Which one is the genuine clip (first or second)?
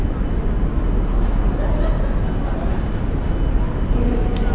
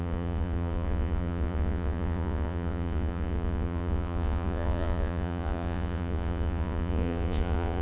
first